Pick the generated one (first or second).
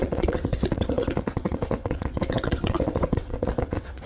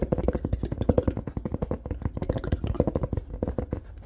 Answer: first